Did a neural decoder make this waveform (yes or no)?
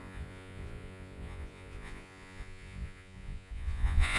yes